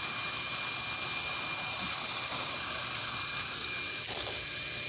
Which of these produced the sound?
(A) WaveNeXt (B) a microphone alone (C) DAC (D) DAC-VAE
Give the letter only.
B